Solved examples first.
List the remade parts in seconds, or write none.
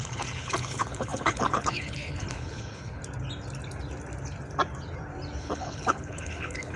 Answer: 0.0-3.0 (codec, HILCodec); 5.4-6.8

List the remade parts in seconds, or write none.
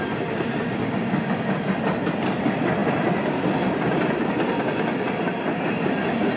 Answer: 0.8-1.3 (codec, DAC)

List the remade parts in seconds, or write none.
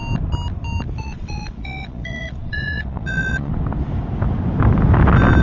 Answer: 1.0-3.5 (vocoder, Vocos)